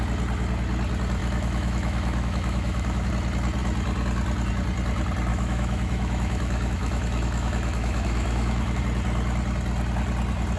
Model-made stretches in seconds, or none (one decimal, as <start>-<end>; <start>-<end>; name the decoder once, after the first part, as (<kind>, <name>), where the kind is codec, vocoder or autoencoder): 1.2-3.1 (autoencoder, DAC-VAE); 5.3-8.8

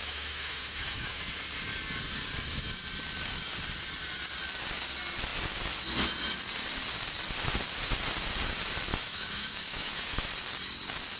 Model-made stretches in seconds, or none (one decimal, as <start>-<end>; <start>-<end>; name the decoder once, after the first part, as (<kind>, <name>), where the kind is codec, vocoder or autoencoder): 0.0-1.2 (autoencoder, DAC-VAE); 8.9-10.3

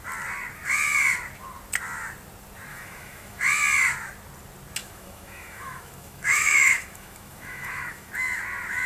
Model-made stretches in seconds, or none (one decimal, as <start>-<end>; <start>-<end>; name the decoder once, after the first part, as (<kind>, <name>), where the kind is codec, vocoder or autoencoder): 2.7-3.4 (autoencoder, DAC-VAE); 4.8-8.1